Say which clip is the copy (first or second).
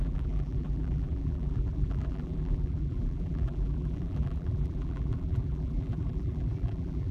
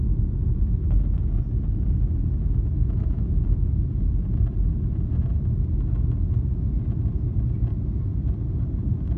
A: first